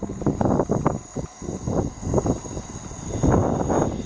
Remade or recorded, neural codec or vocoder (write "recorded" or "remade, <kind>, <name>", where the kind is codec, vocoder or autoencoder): recorded